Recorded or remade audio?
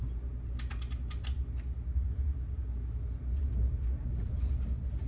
recorded